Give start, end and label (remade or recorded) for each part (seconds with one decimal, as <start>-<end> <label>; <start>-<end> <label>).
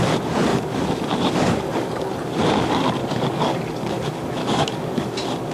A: 0.0-0.5 recorded; 0.5-2.1 remade; 2.1-3.0 recorded; 3.0-3.9 remade; 3.9-4.4 recorded; 4.4-5.1 remade; 5.1-5.5 recorded